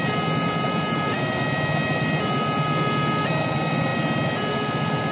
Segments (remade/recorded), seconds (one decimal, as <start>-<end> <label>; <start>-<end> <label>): 0.0-5.1 recorded